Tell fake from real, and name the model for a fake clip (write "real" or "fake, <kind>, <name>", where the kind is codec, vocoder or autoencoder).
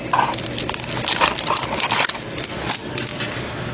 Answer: real